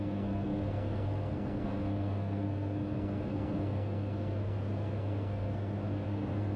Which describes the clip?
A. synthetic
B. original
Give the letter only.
A